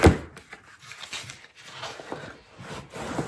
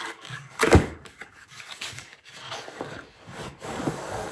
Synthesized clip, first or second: second